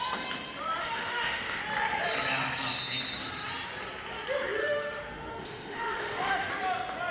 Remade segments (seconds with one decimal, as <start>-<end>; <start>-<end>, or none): 0.8-1.6; 4.6-6.5